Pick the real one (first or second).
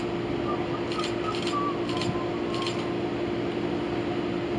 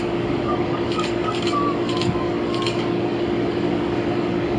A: first